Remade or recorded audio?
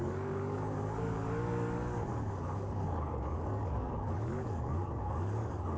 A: remade